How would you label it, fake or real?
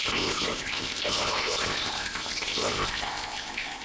fake